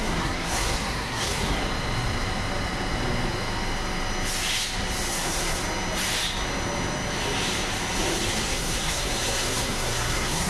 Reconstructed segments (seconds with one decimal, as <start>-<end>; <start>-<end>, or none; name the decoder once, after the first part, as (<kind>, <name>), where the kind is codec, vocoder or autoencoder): 0.0-1.6 (codec, SNAC); 5.1-5.6; 8.3-10.5

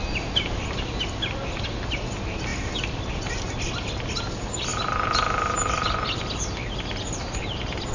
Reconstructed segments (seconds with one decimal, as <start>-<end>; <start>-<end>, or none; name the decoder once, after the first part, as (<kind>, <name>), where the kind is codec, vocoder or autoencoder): none

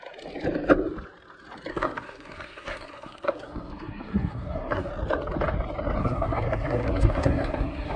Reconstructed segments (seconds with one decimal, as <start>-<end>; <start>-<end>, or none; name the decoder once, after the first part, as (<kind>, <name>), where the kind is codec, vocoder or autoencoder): 1.7-4.9 (codec, SNAC); 6.0-8.0

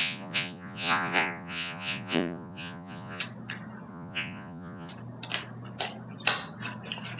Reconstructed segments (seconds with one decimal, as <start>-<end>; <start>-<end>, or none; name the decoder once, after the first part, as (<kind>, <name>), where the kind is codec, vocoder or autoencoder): 0.0-3.2 (vocoder, Vocos); 3.9-4.9

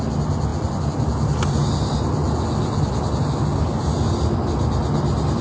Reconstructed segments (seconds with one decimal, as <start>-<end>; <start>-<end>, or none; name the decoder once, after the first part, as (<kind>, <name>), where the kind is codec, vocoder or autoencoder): none

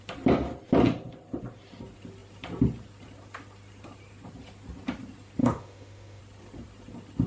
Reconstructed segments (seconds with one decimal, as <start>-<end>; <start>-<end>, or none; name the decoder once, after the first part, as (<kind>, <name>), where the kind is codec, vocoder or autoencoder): 5.4-6.2 (autoencoder, DAC-VAE)

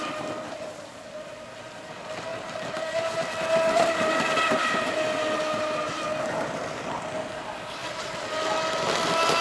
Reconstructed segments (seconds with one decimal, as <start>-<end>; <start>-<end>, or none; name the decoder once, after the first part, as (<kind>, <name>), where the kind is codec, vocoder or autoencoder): none

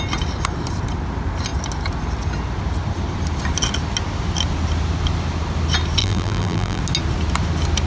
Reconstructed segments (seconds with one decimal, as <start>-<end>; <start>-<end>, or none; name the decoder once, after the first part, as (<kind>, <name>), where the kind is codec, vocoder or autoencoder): 6.0-6.8 (vocoder, BigVGAN v2)